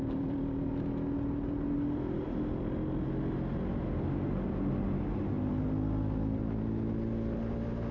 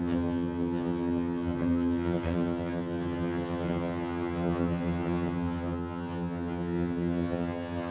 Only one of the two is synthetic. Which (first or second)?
second